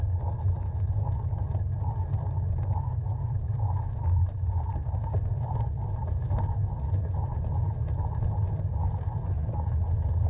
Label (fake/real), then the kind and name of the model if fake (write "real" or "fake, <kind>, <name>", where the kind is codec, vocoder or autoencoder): real